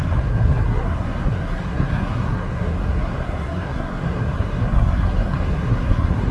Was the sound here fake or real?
fake